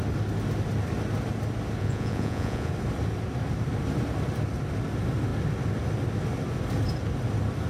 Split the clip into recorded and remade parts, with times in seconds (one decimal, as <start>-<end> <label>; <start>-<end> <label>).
0.0-1.8 recorded; 1.8-2.7 remade; 2.7-7.7 recorded

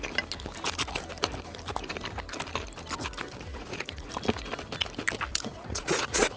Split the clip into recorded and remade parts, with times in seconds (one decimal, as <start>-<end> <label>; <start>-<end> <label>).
0.0-3.5 recorded; 3.5-4.1 remade; 4.1-5.3 recorded; 5.3-6.4 remade

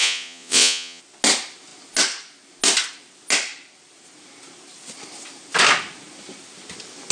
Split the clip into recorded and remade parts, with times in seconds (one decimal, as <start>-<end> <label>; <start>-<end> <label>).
0.0-1.0 remade; 1.0-7.1 recorded

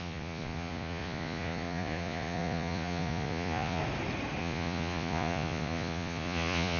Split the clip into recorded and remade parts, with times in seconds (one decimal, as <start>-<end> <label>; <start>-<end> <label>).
0.0-3.8 remade; 3.8-4.4 recorded; 4.4-6.8 remade

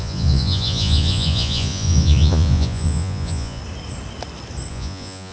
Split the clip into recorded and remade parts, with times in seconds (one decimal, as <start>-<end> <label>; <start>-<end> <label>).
0.0-3.6 remade; 3.6-4.7 recorded; 4.7-5.3 remade

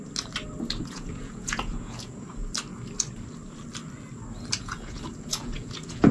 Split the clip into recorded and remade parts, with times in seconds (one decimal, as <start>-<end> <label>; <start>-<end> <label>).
0.0-0.8 recorded; 0.8-2.4 remade; 2.4-4.6 recorded; 4.6-6.1 remade